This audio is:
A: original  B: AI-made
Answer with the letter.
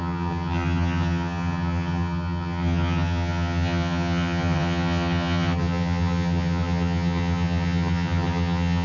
B